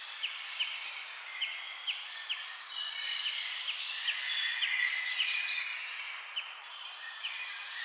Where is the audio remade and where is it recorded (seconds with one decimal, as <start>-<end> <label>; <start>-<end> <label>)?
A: 0.0-2.0 remade; 2.0-6.1 recorded; 6.1-7.8 remade